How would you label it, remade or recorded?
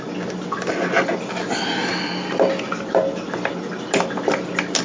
recorded